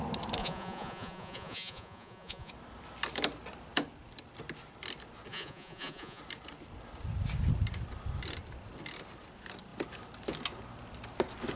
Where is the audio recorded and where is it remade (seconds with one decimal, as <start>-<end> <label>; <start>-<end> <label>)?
0.0-0.4 recorded; 0.4-2.5 remade; 2.5-5.3 recorded; 5.3-6.2 remade; 6.2-11.6 recorded